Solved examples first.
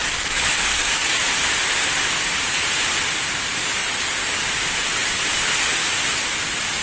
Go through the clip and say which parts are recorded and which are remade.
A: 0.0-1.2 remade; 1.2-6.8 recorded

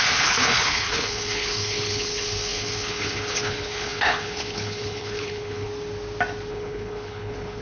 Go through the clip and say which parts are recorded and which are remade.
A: 0.0-5.7 remade; 5.7-6.5 recorded; 6.5-7.6 remade

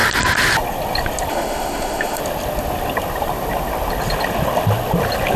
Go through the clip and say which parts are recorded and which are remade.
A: 0.0-1.3 recorded; 1.3-2.2 remade; 2.2-5.4 recorded

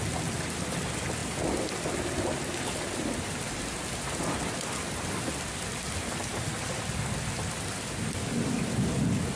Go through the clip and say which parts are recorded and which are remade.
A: 0.0-9.4 recorded

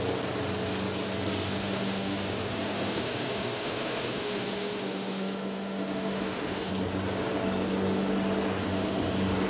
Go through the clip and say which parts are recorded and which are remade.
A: 0.0-1.6 recorded; 1.6-6.7 remade; 6.7-8.6 recorded; 8.6-9.1 remade; 9.1-9.5 recorded

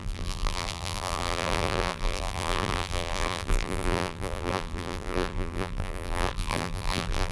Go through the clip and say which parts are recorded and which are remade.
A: 0.0-7.3 remade